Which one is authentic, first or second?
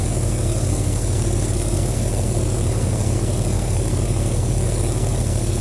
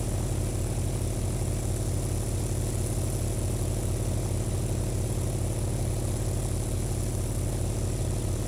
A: second